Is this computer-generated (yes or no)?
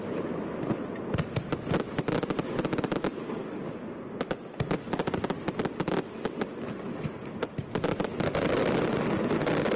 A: no